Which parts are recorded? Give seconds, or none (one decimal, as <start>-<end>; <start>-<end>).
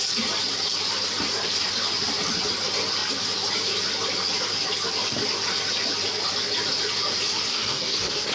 0.0-7.5